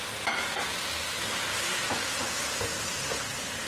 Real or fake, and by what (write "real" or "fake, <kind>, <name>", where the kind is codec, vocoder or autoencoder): real